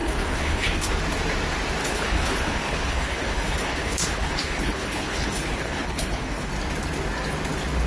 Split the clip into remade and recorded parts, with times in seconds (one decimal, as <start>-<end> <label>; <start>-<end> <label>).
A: 0.0-1.0 remade; 1.0-1.8 recorded; 1.8-6.5 remade; 6.5-7.9 recorded